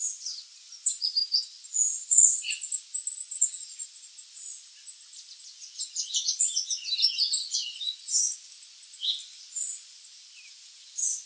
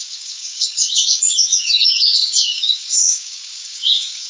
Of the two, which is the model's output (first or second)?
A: second